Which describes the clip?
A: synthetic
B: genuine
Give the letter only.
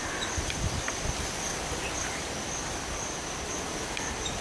B